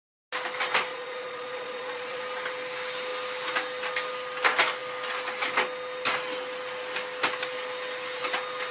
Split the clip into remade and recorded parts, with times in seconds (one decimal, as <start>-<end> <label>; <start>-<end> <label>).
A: 0.0-0.9 recorded; 0.9-2.2 remade; 2.2-8.7 recorded